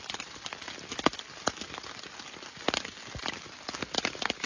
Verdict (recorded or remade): recorded